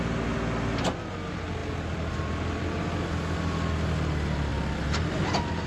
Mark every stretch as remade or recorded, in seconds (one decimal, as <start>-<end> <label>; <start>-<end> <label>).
0.0-5.7 recorded